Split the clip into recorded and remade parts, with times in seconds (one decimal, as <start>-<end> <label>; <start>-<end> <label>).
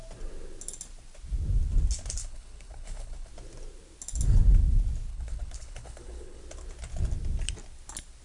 0.0-2.2 recorded; 2.2-3.3 remade; 3.3-5.1 recorded; 5.1-6.4 remade; 6.4-8.2 recorded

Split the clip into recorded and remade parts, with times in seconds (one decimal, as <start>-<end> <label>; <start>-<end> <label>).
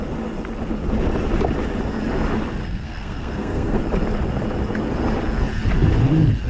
0.0-2.6 recorded; 2.6-3.8 remade; 3.8-6.5 recorded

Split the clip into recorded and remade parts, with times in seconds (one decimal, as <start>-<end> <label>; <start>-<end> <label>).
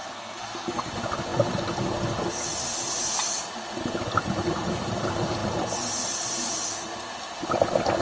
0.0-0.9 remade; 0.9-8.0 recorded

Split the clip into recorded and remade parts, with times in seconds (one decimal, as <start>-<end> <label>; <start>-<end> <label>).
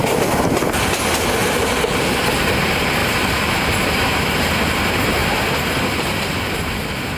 0.0-1.4 recorded; 1.4-2.2 remade; 2.2-3.0 recorded; 3.0-3.5 remade; 3.5-7.2 recorded